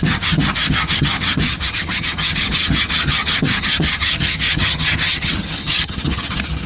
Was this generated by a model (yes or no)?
yes